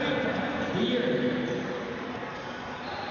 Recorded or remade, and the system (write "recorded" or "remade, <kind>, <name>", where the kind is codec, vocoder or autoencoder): remade, vocoder, BigVGAN v2